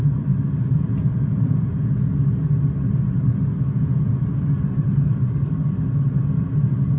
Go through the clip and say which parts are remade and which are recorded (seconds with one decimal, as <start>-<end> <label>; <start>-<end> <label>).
0.0-0.7 recorded; 0.7-1.9 remade; 1.9-3.5 recorded; 3.5-4.3 remade; 4.3-7.0 recorded